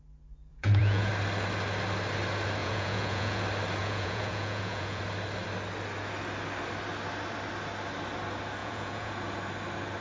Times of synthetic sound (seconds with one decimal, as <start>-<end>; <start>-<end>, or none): 0.5-1.1; 2.6-3.4; 3.8-5.0; 8.6-9.1